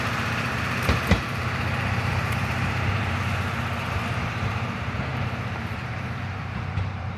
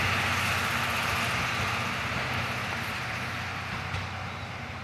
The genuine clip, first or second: second